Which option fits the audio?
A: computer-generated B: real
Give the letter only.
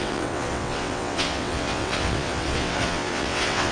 A